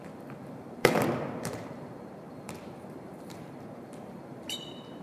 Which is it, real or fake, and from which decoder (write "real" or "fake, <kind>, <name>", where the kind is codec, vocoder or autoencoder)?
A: fake, vocoder, BigVGAN v2